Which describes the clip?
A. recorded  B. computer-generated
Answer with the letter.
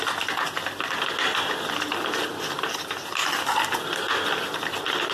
A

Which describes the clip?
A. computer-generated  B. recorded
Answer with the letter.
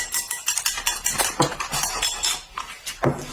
B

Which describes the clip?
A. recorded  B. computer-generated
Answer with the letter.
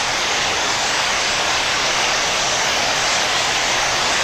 B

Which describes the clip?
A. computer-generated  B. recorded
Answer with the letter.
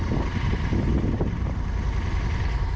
B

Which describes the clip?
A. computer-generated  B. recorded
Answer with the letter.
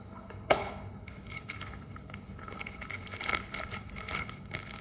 A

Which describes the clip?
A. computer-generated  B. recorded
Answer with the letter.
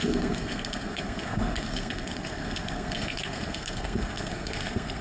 A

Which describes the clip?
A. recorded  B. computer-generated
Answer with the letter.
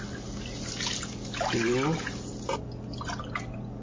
A